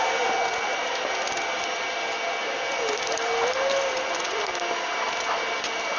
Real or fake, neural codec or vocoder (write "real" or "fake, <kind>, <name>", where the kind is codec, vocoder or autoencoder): real